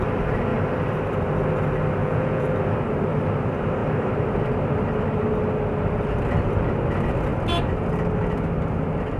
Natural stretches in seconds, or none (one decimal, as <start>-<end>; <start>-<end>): 0.0-2.0; 2.5-9.2

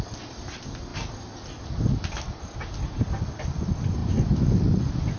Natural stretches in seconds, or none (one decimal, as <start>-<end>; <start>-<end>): 0.0-5.2

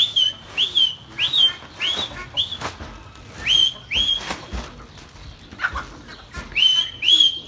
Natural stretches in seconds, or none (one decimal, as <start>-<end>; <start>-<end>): 0.0-7.5

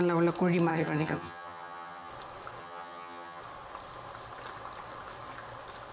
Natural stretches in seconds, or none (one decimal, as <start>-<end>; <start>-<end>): 0.0-0.7; 2.1-2.6; 3.4-5.9

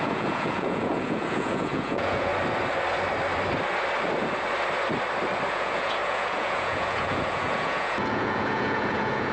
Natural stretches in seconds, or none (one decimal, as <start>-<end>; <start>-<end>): 2.3-5.5

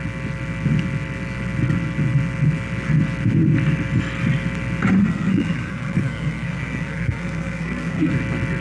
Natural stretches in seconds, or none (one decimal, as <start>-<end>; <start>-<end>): 0.0-5.0; 8.1-8.6